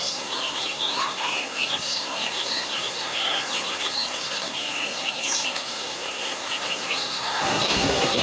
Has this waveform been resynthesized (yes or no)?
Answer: yes